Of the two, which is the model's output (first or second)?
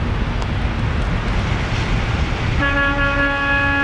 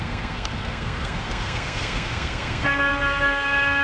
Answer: second